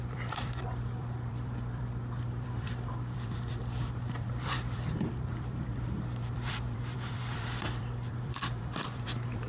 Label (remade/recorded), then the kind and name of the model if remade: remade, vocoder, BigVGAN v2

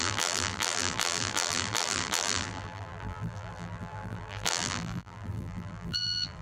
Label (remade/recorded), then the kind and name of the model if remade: remade, vocoder, BigVGAN v2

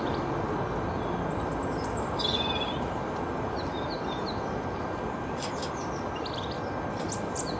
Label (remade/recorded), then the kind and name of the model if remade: recorded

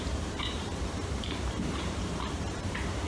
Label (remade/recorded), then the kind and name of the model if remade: remade, vocoder, BigVGAN v2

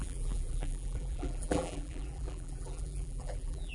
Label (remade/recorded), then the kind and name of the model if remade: remade, vocoder, BigVGAN v2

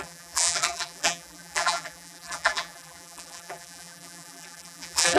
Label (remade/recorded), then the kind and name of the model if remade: remade, vocoder, BigVGAN v2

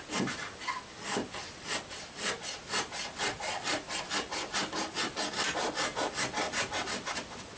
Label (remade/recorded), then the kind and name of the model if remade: recorded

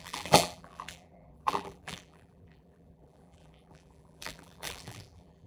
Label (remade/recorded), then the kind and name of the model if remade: remade, vocoder, BigVGAN v2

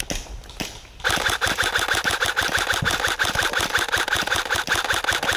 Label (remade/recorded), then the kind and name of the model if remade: recorded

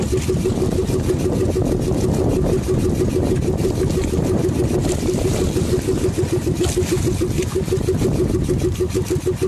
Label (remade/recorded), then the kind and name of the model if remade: recorded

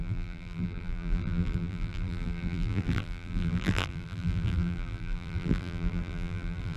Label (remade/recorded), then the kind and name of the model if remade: remade, vocoder, BigVGAN v2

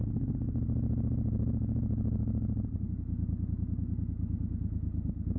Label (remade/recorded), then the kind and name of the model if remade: recorded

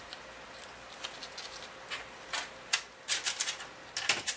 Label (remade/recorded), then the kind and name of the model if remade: recorded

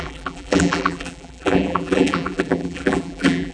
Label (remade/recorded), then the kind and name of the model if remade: remade, vocoder, BigVGAN v2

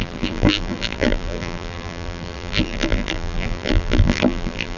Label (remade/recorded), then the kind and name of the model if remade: remade, vocoder, BigVGAN v2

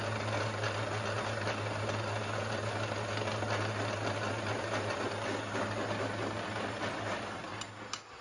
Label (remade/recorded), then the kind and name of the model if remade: recorded